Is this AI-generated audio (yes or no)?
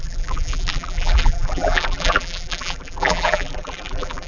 yes